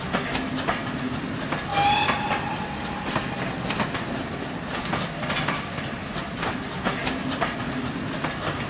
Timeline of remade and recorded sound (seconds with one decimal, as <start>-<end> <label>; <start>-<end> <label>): 0.0-6.0 recorded; 6.0-6.6 remade; 6.6-7.2 recorded; 7.2-7.8 remade; 7.8-8.7 recorded